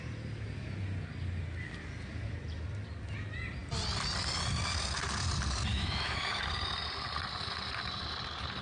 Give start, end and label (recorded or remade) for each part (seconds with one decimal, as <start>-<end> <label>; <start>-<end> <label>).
0.0-5.7 recorded; 5.7-6.4 remade; 6.4-8.6 recorded